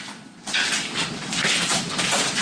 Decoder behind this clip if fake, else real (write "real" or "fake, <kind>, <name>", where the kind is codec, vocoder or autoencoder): real